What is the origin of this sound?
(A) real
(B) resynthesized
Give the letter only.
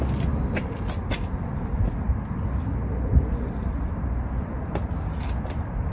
A